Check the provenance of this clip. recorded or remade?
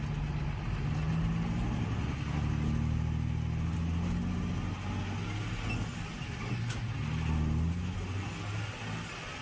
recorded